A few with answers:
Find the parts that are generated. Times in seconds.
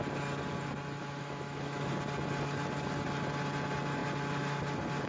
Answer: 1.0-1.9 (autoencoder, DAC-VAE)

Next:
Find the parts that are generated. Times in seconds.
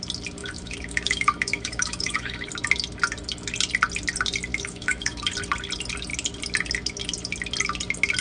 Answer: 0.4-2.5 (autoencoder, DAC-VAE); 4.5-5.2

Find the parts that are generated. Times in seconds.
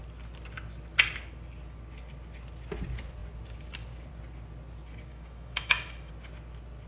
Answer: 5.1-6.1 (autoencoder, DAC-VAE)